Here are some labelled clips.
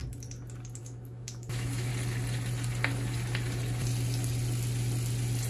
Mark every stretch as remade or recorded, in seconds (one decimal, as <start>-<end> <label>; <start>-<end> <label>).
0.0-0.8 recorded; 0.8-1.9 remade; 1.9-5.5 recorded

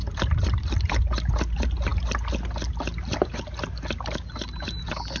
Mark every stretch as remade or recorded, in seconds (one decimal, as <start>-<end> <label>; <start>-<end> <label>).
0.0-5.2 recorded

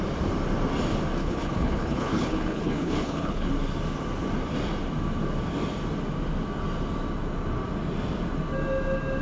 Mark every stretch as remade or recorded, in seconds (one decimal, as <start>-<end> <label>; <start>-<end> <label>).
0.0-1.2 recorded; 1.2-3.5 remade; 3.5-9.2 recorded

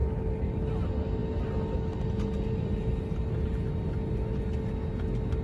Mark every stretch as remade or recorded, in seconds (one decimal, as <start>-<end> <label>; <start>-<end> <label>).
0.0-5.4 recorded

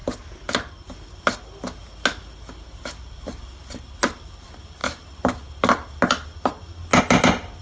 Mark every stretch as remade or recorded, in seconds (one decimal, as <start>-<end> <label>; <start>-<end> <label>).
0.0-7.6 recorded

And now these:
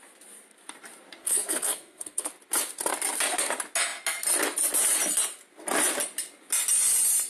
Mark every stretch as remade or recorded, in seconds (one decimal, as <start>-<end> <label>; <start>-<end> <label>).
0.0-1.2 recorded; 1.2-2.3 remade; 2.3-7.3 recorded